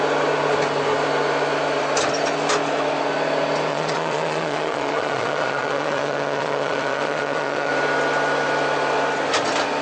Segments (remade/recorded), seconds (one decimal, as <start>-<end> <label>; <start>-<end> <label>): 0.0-3.7 recorded; 3.7-7.7 remade; 7.7-9.8 recorded